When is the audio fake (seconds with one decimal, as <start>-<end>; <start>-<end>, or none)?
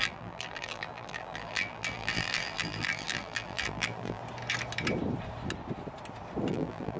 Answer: 0.0-4.2; 6.5-7.0